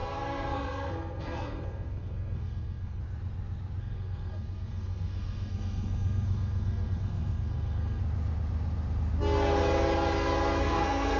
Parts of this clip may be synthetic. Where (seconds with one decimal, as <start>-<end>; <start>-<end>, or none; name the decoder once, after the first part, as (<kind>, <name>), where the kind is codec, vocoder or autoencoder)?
0.0-3.0 (codec, SNAC); 3.8-8.0; 10.6-11.2